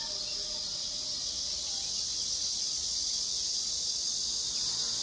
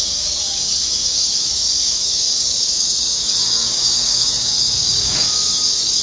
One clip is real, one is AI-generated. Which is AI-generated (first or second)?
second